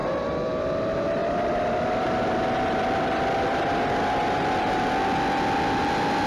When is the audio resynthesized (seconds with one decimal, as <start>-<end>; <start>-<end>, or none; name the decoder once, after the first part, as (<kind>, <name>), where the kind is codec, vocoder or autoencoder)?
0.0-0.5 (vocoder, BigVGAN v2); 1.2-4.9